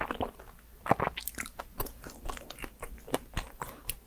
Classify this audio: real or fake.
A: real